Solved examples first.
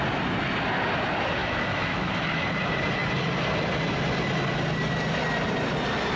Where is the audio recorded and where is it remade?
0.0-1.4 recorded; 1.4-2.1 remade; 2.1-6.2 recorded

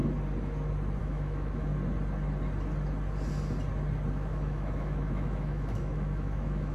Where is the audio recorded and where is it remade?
0.0-1.0 recorded; 1.0-1.7 remade; 1.7-4.1 recorded; 4.1-6.7 remade

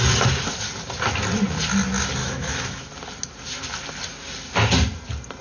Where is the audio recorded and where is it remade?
0.0-2.2 recorded; 2.2-2.9 remade; 2.9-5.4 recorded

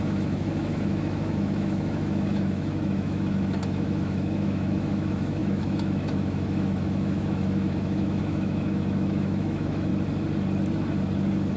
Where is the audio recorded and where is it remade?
0.0-9.9 remade; 9.9-11.6 recorded

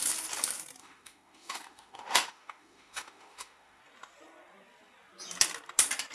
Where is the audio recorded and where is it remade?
0.0-0.8 recorded; 0.8-3.8 remade; 3.8-6.1 recorded

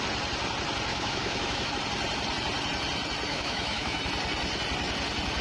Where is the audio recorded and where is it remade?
0.0-0.9 recorded; 0.9-1.7 remade; 1.7-3.3 recorded; 3.3-4.0 remade; 4.0-5.4 recorded

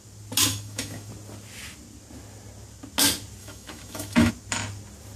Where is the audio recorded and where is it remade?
0.0-0.5 recorded; 0.5-1.1 remade; 1.1-3.4 recorded; 3.4-4.3 remade; 4.3-5.2 recorded